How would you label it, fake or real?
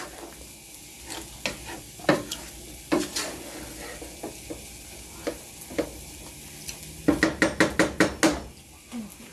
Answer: real